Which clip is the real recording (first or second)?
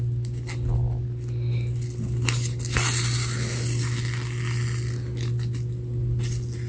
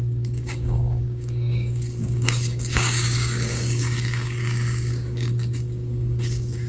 first